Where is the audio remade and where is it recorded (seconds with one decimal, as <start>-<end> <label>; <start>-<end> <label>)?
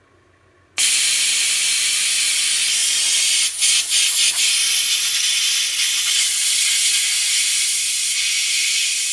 0.0-9.1 recorded